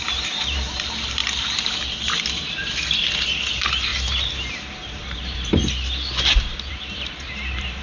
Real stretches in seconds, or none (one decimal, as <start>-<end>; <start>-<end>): 1.2-3.5; 5.6-6.7